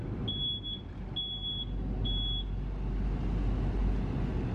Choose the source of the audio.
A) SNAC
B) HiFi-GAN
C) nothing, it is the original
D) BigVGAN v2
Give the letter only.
C